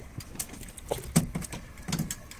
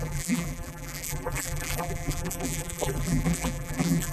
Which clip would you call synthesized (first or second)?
second